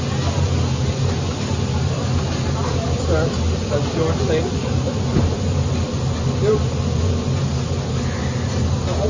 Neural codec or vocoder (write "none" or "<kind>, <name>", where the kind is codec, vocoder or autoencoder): none